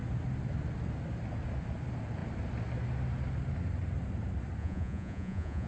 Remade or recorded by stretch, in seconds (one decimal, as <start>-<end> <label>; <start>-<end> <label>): 0.0-4.6 recorded; 4.6-5.7 remade